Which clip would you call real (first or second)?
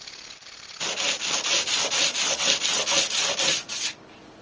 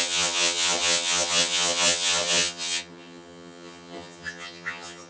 first